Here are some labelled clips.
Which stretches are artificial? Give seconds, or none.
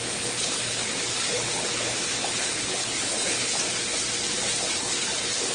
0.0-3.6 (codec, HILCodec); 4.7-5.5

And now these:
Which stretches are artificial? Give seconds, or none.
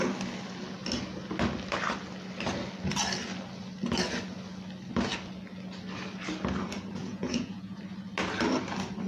7.0-7.8 (vocoder, Vocos)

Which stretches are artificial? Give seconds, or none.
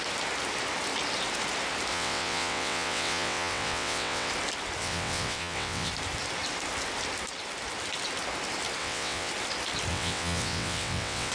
1.9-4.3 (vocoder, WaveNeXt); 4.8-5.9; 8.8-9.3; 9.9-11.3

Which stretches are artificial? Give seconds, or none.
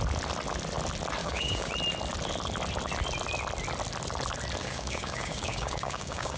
1.2-1.7 (codec, DAC); 4.6-6.4